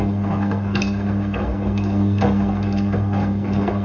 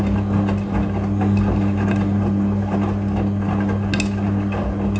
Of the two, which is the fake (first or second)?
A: first